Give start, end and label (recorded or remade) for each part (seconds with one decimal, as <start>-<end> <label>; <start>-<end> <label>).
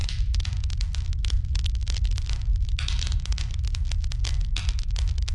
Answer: 0.0-5.3 recorded